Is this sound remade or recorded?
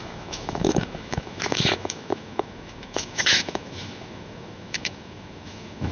remade